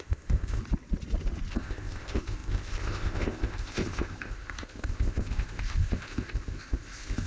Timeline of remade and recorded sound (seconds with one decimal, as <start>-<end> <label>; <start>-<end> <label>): 0.0-0.6 remade; 0.6-1.5 recorded; 1.5-7.3 remade